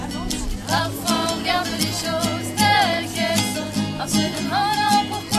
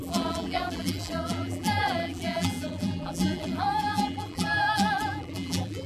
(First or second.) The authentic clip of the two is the first